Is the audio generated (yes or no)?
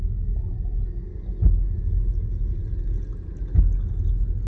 no